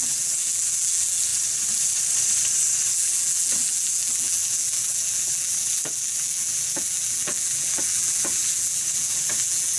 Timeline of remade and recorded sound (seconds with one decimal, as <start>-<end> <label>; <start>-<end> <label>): 0.0-1.3 remade; 1.3-2.9 recorded; 2.9-9.8 remade